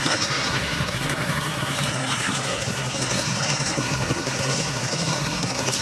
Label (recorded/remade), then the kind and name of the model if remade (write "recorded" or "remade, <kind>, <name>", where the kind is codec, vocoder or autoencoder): remade, codec, SNAC